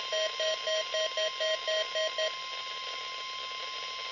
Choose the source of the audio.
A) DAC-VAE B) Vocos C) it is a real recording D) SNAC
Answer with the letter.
C